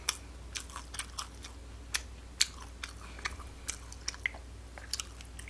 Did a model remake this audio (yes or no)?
no